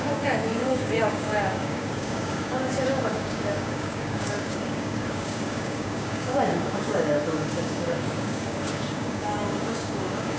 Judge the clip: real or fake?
fake